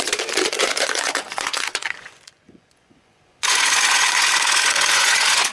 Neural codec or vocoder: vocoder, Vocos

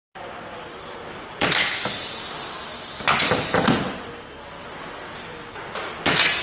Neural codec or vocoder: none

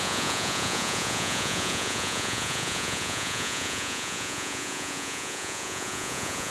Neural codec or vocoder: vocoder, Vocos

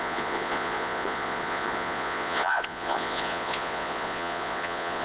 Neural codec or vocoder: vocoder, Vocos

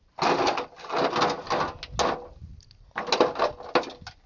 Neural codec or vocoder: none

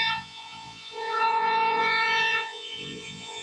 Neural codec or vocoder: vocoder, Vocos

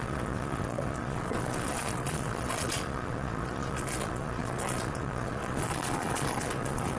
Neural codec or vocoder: vocoder, Vocos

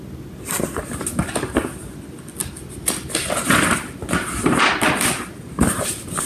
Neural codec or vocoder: none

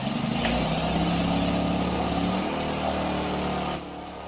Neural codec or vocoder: none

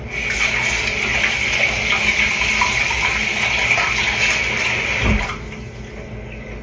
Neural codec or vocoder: none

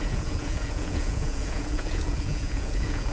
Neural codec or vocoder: vocoder, Vocos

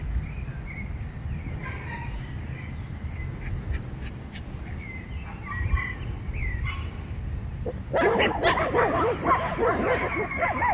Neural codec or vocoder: none